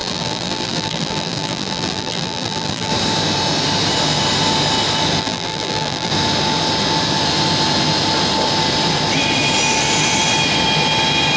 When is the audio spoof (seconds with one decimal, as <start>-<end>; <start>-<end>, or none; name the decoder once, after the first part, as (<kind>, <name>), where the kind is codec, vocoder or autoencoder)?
0.0-2.9 (vocoder, BigVGAN v2); 5.2-6.1